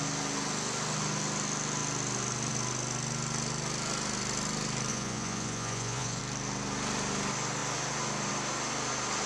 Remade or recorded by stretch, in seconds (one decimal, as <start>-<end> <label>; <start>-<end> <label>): 0.0-4.9 recorded; 4.9-6.2 remade; 6.2-9.3 recorded